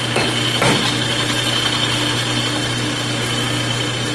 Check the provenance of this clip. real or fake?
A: real